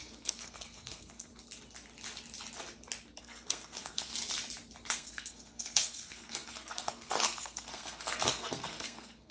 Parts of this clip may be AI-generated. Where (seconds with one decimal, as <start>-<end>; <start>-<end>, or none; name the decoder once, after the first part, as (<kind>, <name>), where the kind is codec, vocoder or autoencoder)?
0.0-1.3 (codec, SNAC); 3.2-4.1; 4.9-9.3